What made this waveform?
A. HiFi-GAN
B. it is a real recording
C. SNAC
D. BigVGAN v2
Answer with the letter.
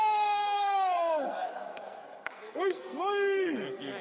C